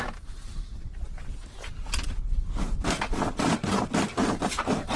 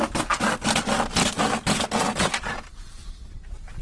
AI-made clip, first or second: first